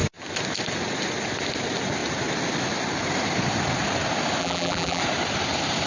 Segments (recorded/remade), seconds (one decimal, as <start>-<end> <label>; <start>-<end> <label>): 0.0-4.4 recorded; 4.4-5.0 remade; 5.0-5.9 recorded

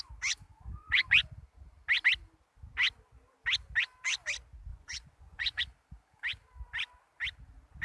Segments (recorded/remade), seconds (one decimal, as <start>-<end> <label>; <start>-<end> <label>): 0.0-0.5 recorded; 0.5-1.4 remade; 1.4-4.7 recorded; 4.7-5.6 remade; 5.6-7.8 recorded

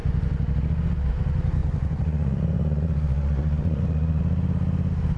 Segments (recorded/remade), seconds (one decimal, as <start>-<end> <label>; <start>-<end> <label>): 0.0-1.6 recorded; 1.6-4.2 remade; 4.2-5.2 recorded

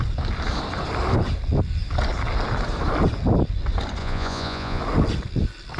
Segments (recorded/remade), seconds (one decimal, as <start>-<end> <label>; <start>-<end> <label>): 0.0-4.0 recorded; 4.0-4.8 remade; 4.8-5.8 recorded

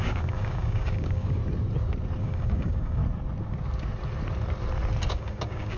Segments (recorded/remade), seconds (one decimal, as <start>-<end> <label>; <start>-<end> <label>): 0.0-1.4 remade; 1.4-2.2 recorded; 2.2-3.0 remade; 3.0-5.1 recorded; 5.1-5.8 remade

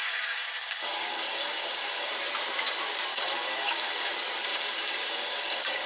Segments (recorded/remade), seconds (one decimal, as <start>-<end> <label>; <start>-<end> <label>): 0.0-2.1 remade; 2.1-3.1 recorded; 3.1-4.1 remade; 4.1-4.5 recorded; 4.5-5.9 remade

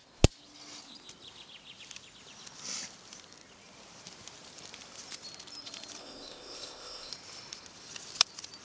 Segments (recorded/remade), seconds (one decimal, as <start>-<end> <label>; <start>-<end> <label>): 0.0-6.0 recorded; 6.0-7.1 remade; 7.1-8.6 recorded